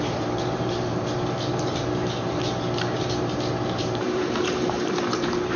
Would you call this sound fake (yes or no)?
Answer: yes